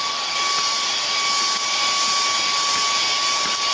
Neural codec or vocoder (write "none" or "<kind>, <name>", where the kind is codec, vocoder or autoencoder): none